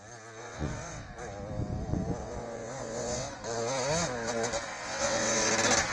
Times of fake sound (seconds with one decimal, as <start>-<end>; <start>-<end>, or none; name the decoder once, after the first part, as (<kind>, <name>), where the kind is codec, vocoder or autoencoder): 0.4-1.1 (vocoder, WaveNeXt); 2.2-3.3; 4.7-5.5